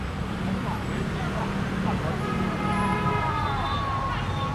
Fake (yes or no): no